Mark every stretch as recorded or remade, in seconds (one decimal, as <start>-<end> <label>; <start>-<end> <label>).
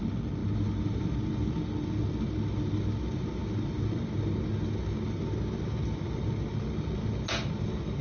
0.0-8.0 recorded